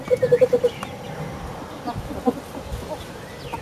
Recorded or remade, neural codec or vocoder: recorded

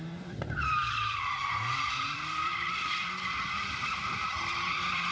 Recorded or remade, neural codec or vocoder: remade, vocoder, BigVGAN v2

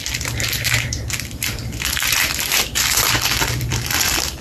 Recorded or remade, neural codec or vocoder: remade, vocoder, BigVGAN v2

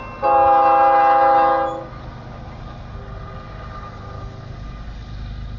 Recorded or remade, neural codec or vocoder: recorded